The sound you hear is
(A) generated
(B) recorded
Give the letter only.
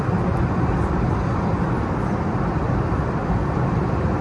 A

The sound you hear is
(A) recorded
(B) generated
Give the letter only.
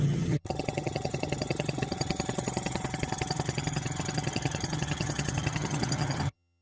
B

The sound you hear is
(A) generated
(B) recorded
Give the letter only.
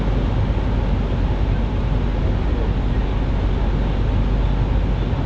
B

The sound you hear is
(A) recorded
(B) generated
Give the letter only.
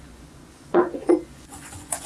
B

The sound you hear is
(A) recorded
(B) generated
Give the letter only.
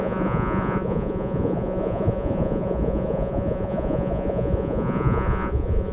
B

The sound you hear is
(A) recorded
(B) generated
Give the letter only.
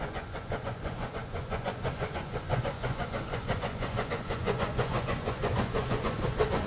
B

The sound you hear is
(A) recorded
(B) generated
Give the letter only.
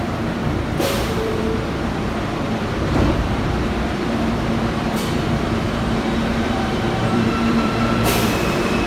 B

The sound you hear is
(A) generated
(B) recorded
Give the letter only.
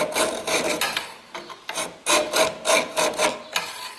B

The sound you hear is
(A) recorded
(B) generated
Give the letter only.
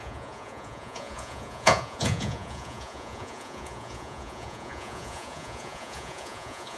B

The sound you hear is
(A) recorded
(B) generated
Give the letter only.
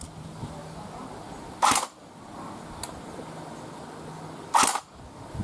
A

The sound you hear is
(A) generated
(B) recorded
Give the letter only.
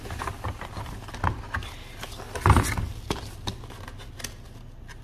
B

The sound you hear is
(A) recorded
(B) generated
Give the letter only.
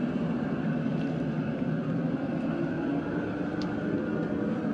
A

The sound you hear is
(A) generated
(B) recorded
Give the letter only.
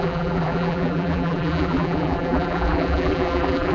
A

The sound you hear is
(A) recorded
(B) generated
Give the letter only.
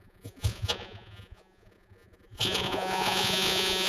B